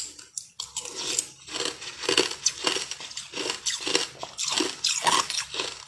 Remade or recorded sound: recorded